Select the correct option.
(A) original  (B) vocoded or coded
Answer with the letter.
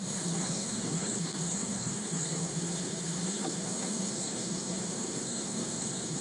B